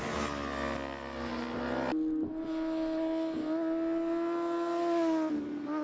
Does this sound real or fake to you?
real